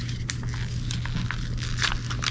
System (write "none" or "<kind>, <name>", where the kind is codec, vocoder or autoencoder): none